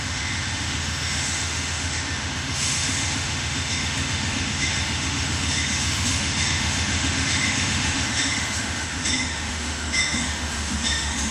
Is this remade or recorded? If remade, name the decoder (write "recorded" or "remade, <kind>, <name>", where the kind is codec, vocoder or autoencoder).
remade, autoencoder, DAC-VAE